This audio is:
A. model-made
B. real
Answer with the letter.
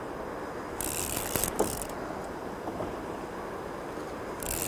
B